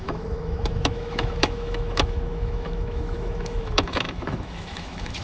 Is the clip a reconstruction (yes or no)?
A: yes